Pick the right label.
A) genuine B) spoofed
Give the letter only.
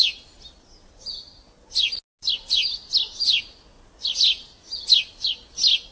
A